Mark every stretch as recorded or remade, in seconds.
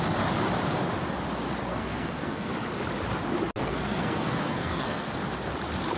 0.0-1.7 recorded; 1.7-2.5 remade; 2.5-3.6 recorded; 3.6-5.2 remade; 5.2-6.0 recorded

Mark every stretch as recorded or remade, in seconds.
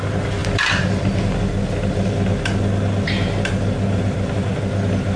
0.0-5.2 recorded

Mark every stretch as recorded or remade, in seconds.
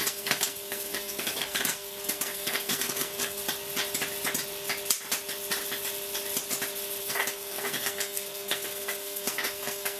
0.0-3.4 remade; 3.4-7.0 recorded; 7.0-10.0 remade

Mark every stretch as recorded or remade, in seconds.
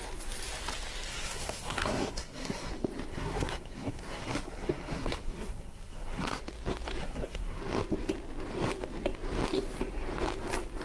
0.0-1.1 recorded; 1.1-2.7 remade; 2.7-3.1 recorded; 3.1-6.4 remade; 6.4-7.0 recorded; 7.0-7.6 remade; 7.6-10.8 recorded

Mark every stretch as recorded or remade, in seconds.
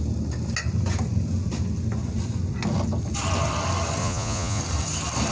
0.0-4.0 recorded; 4.0-4.6 remade; 4.6-5.3 recorded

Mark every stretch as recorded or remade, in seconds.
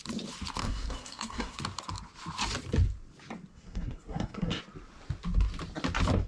0.0-0.6 recorded; 0.6-1.6 remade; 1.6-3.5 recorded; 3.5-4.6 remade; 4.6-6.3 recorded